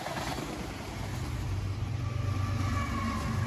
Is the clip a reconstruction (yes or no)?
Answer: no